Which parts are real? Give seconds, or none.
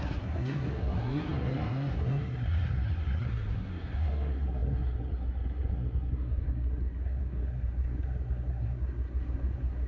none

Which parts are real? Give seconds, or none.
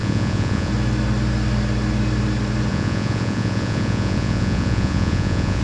0.7-2.7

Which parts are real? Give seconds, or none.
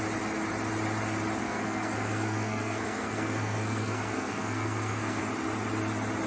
0.0-1.4; 5.2-6.3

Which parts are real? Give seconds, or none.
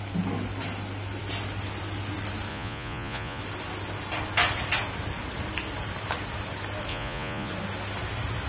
0.0-2.5; 3.4-6.9; 7.5-8.5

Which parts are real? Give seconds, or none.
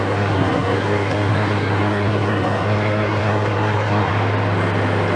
4.1-5.2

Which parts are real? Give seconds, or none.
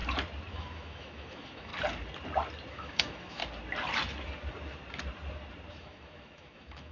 0.0-0.5; 1.7-2.7; 3.4-5.7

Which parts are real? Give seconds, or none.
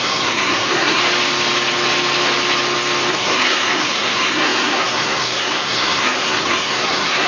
1.0-3.1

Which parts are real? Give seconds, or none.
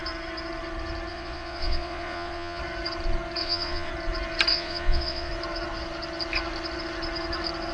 0.0-1.1; 2.6-3.4; 3.9-4.5; 5.3-7.7